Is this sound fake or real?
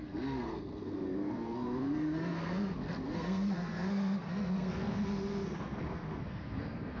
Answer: fake